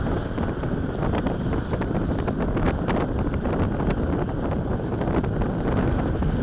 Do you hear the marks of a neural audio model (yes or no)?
no